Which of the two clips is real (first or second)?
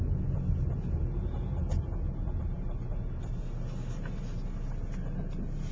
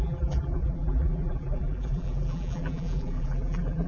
first